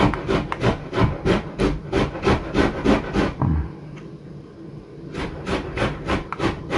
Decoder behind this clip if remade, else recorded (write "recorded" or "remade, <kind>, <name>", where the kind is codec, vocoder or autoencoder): recorded